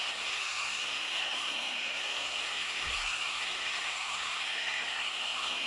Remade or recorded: remade